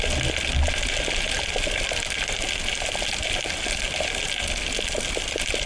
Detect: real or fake real